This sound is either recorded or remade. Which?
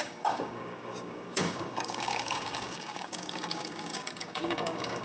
remade